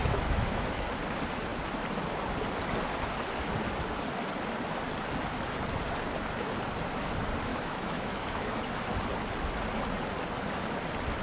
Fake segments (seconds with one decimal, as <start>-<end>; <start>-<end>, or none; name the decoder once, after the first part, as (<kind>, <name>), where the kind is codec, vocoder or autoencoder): 0.0-0.9 (autoencoder, DAC-VAE); 7.5-8.8